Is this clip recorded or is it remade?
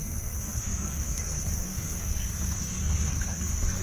remade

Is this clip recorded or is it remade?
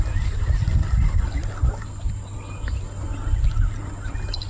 recorded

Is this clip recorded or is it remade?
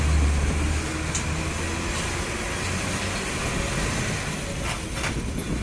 recorded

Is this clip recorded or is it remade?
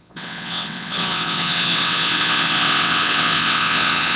remade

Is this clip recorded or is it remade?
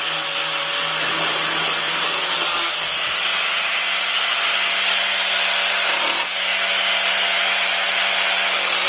recorded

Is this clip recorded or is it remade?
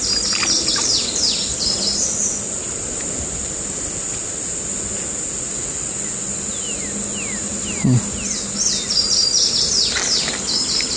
recorded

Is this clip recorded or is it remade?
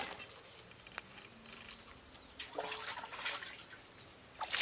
recorded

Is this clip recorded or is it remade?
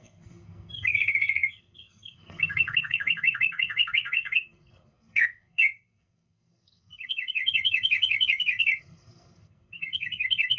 remade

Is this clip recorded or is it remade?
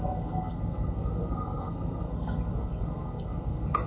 remade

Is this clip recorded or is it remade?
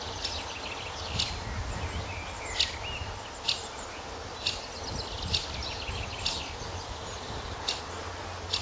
recorded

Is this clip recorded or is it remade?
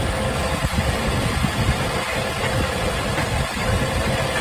recorded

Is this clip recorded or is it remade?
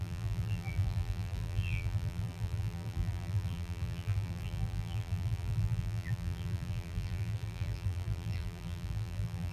remade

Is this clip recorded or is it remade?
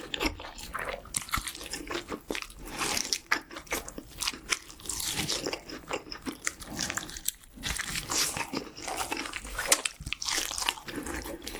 remade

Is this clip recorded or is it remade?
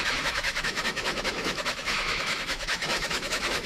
remade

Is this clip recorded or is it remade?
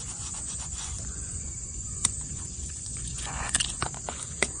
remade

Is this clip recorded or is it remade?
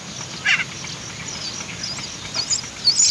recorded